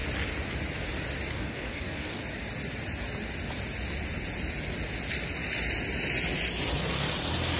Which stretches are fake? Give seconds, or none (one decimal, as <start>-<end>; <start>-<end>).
1.3-2.2